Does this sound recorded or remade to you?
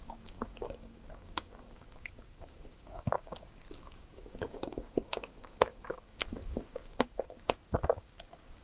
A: remade